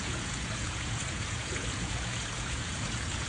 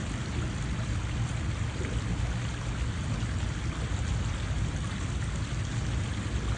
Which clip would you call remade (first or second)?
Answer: first